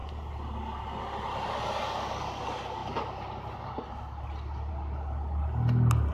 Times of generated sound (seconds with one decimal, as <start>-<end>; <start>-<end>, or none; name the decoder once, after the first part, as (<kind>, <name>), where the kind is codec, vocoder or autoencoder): none